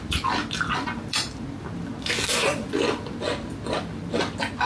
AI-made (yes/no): no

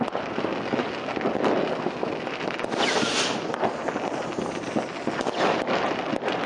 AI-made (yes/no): no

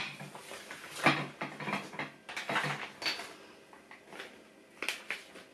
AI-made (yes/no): no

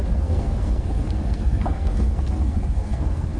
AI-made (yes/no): yes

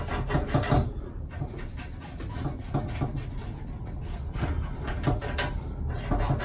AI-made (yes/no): no